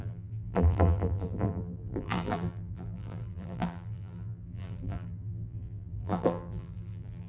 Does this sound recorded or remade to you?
remade